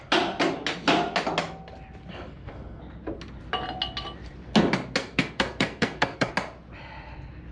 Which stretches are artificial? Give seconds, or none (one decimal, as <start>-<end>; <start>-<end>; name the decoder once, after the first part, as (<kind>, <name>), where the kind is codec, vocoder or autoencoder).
2.1-2.8 (codec, SNAC); 5.0-6.3